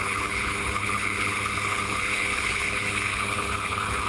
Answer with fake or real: fake